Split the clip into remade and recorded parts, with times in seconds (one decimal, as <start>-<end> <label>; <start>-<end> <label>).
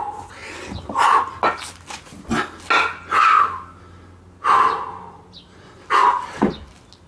0.0-7.1 recorded